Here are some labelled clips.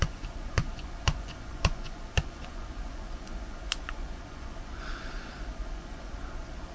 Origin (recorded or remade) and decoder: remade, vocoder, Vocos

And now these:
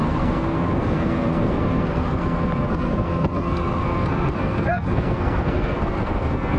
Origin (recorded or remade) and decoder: remade, codec, SNAC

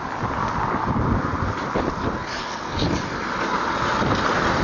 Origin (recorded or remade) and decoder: recorded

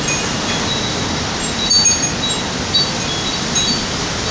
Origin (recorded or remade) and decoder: recorded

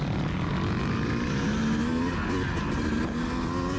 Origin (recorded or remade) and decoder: recorded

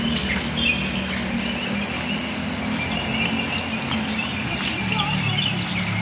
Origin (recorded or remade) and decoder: recorded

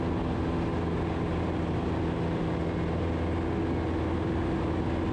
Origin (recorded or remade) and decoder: recorded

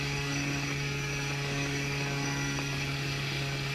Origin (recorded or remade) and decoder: remade, codec, DAC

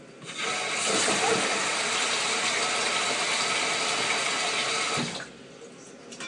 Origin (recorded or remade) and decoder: recorded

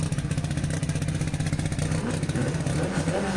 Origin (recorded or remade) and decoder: recorded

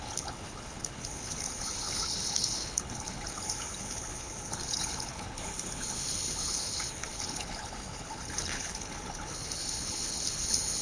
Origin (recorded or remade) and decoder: remade, codec, HILCodec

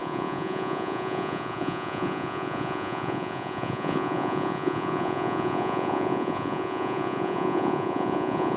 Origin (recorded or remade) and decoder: remade, vocoder, Vocos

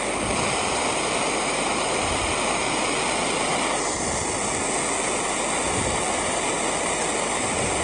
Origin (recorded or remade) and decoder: recorded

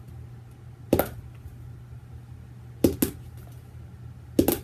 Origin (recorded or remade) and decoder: recorded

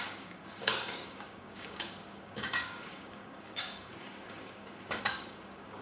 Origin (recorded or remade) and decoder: remade, codec, DAC